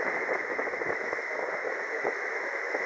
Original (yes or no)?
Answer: no